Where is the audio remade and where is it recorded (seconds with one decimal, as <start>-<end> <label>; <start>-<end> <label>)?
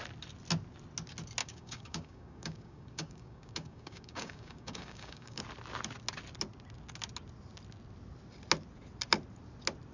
0.0-1.4 recorded; 1.4-5.4 remade; 5.4-9.9 recorded